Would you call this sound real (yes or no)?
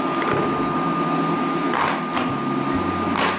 yes